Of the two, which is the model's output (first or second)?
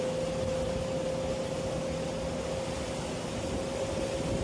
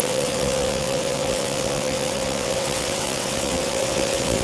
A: second